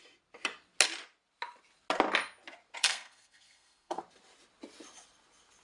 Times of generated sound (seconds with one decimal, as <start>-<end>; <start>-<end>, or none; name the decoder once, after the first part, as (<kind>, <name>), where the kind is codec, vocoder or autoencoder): 2.8-4.0 (codec, SNAC)